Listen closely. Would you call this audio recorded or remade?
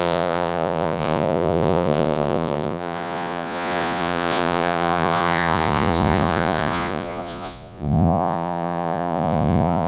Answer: remade